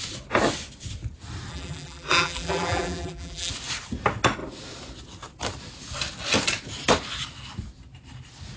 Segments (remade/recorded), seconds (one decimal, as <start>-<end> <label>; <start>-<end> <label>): 0.0-1.5 recorded; 1.5-3.5 remade; 3.5-8.6 recorded